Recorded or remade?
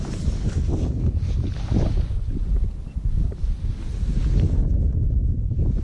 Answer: recorded